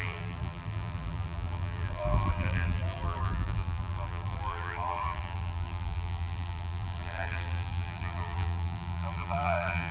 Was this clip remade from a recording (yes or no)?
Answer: yes